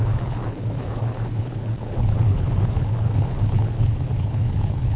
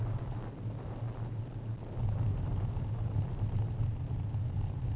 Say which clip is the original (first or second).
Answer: second